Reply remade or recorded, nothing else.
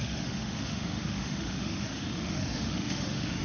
remade